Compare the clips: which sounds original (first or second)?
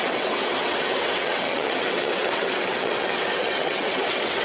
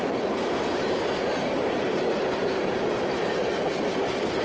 second